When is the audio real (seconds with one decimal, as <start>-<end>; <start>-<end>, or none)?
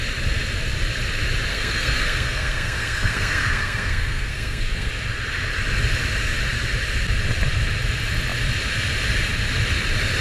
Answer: 0.0-1.5; 4.9-10.2